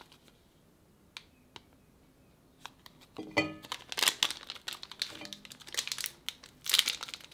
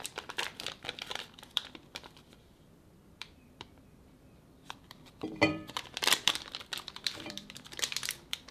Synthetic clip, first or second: second